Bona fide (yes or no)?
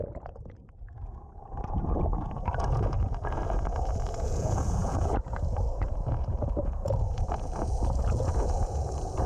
no